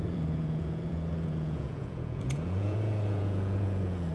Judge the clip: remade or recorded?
remade